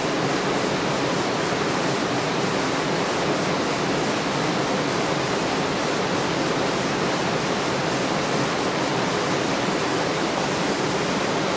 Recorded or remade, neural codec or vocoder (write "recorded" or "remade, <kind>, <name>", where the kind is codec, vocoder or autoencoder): recorded